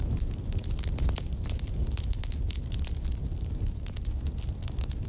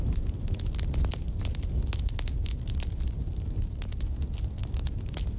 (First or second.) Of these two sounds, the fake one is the first